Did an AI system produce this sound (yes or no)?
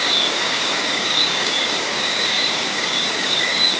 yes